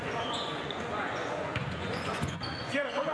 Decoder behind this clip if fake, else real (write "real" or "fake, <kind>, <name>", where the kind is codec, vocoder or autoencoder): fake, vocoder, Vocos